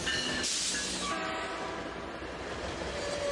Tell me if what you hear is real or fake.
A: real